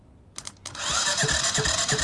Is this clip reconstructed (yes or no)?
no